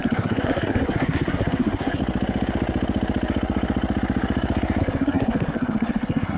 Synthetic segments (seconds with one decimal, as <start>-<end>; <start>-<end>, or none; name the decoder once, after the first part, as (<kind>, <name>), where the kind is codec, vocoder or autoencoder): 0.0-2.0 (codec, SNAC); 4.8-6.4